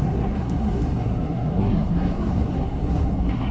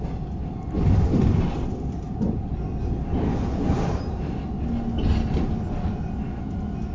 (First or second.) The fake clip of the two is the first